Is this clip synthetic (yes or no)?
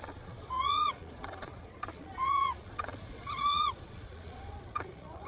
yes